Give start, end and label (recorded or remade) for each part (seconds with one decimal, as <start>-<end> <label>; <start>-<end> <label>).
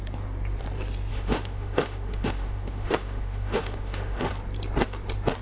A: 0.0-1.1 recorded; 1.1-4.3 remade; 4.3-5.4 recorded